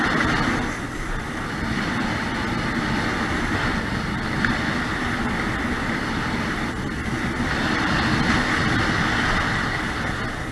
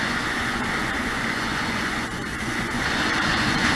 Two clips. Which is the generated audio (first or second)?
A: second